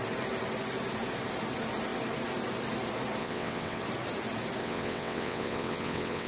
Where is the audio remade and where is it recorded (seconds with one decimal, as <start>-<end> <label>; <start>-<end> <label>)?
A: 0.0-3.2 recorded; 3.2-3.8 remade; 3.8-4.6 recorded; 4.6-6.3 remade